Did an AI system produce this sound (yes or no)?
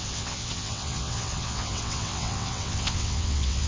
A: yes